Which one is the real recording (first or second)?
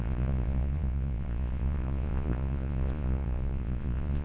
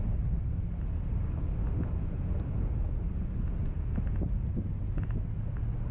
second